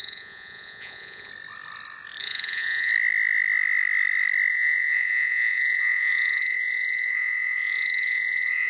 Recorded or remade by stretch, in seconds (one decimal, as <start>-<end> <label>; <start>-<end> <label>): 0.0-1.3 remade; 1.3-2.2 recorded; 2.2-2.9 remade; 2.9-4.5 recorded; 4.5-8.7 remade